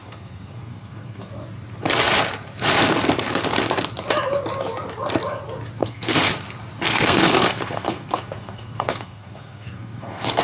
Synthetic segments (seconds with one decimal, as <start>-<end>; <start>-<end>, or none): 0.0-1.3; 5.8-6.3; 6.9-10.4